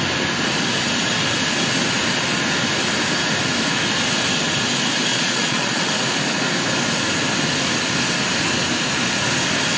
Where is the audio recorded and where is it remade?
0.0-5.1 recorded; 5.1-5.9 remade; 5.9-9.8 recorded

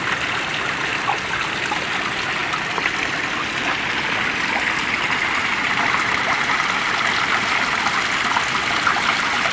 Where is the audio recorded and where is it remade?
0.0-9.5 recorded

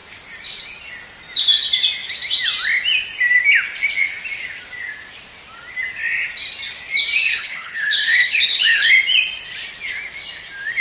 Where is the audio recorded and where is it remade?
0.0-7.3 recorded; 7.3-8.9 remade; 8.9-10.8 recorded